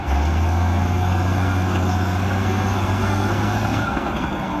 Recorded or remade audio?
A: remade